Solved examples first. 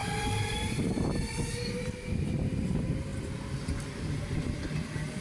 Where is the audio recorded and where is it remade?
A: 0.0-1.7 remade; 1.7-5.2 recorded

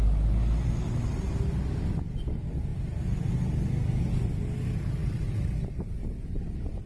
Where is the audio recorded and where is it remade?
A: 0.0-6.9 recorded

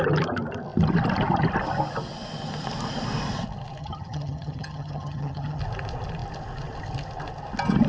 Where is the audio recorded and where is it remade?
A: 0.0-3.8 recorded; 3.8-5.6 remade; 5.6-7.9 recorded

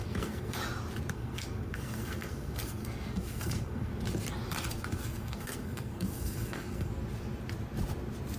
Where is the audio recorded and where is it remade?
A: 0.0-0.6 remade; 0.6-1.1 recorded; 1.1-3.9 remade; 3.9-4.7 recorded; 4.7-6.9 remade; 6.9-8.4 recorded